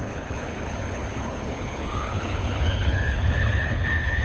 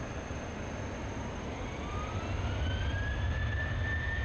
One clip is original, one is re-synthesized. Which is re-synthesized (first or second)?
first